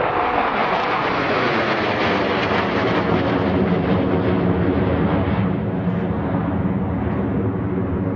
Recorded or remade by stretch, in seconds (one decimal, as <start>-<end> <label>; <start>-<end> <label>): 0.0-0.6 recorded; 0.6-1.6 remade; 1.6-8.2 recorded